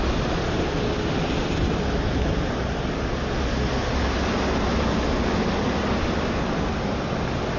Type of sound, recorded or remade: recorded